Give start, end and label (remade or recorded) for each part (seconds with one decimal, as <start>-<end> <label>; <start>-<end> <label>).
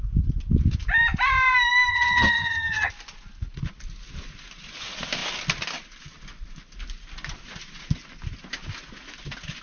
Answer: 0.0-1.9 recorded; 1.9-2.9 remade; 2.9-9.6 recorded